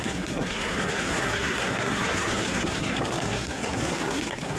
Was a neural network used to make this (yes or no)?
yes